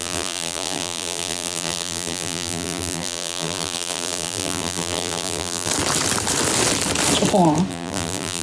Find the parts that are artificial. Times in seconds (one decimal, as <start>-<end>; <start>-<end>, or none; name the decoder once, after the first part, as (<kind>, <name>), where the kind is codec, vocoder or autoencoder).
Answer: 0.0-5.7 (vocoder, BigVGAN v2); 7.7-8.4